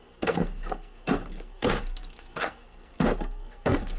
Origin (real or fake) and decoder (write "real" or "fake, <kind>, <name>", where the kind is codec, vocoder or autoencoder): fake, codec, SNAC